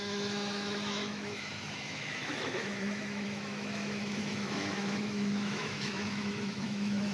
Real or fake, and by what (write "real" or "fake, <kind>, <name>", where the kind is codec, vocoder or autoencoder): fake, autoencoder, DAC-VAE